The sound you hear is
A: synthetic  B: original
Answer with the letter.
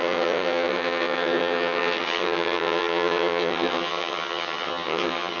A